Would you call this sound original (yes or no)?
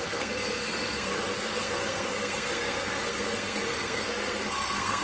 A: no